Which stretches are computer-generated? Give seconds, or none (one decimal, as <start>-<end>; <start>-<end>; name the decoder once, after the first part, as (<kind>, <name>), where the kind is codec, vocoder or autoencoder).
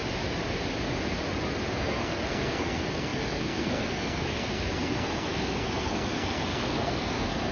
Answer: 1.8-7.5 (codec, SNAC)